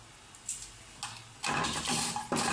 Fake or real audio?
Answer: real